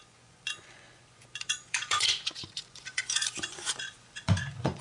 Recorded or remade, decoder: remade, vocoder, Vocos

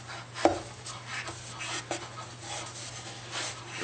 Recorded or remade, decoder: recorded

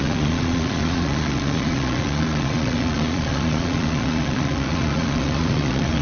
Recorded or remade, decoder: remade, vocoder, Vocos